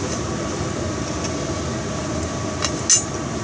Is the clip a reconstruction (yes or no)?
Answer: no